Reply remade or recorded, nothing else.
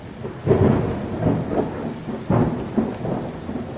recorded